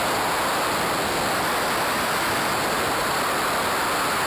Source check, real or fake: real